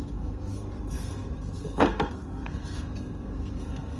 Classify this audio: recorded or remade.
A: remade